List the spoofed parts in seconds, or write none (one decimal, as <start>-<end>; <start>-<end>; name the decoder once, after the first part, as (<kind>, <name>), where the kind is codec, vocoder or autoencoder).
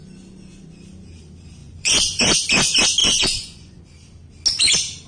1.6-2.2 (vocoder, Vocos); 3.0-3.8